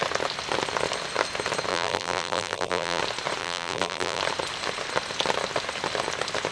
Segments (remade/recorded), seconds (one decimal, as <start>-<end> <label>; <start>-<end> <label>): 0.0-1.7 recorded; 1.7-3.0 remade; 3.0-3.4 recorded; 3.4-4.2 remade; 4.2-6.5 recorded